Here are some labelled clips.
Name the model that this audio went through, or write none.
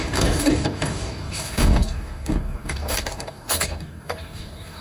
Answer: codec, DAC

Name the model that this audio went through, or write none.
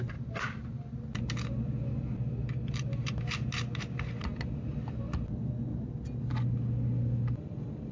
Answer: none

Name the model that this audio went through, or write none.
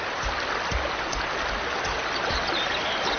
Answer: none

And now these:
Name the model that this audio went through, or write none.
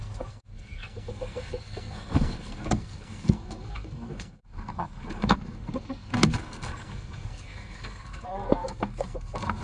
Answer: codec, SNAC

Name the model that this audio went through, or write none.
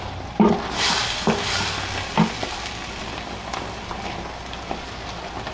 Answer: none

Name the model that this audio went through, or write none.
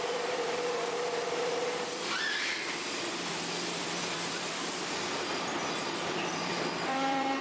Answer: vocoder, BigVGAN v2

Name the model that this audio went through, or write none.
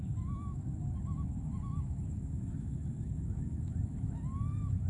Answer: autoencoder, DAC-VAE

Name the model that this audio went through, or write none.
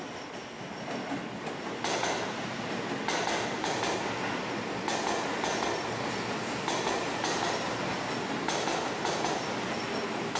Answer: none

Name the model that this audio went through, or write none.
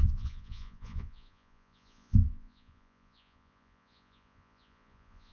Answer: vocoder, Vocos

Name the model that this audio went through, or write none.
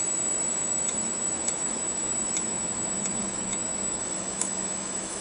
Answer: autoencoder, DAC-VAE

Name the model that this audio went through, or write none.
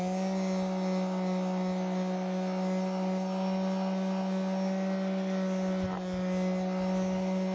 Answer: none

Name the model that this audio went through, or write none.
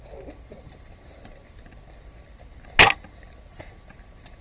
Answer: none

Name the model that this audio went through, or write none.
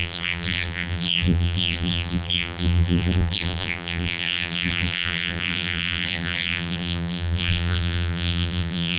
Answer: vocoder, BigVGAN v2